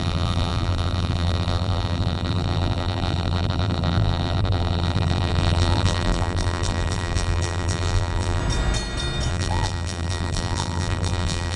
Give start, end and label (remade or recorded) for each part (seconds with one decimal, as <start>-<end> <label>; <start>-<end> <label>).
0.0-8.4 remade; 8.4-9.3 recorded; 9.3-11.6 remade